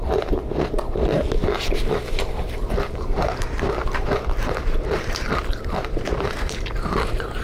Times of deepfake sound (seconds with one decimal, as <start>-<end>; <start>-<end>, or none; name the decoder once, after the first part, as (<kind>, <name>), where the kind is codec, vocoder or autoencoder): 0.0-7.4 (vocoder, BigVGAN v2)